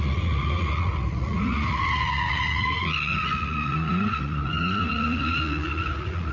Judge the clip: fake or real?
fake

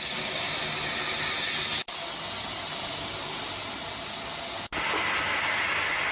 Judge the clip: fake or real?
real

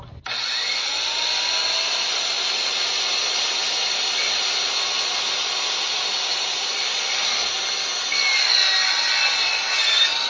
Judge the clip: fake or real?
real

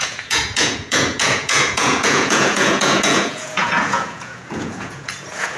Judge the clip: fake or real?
fake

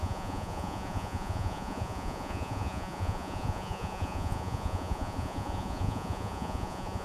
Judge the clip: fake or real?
fake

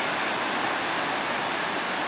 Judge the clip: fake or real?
real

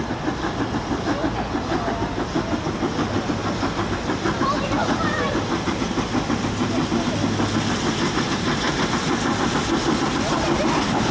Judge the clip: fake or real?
real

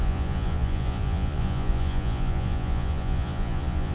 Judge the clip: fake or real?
fake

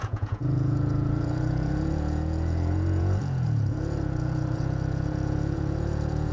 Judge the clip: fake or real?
fake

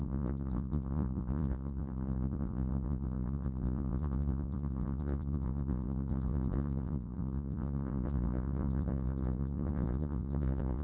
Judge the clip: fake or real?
fake